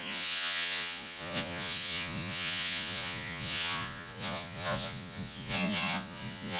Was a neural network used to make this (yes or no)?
yes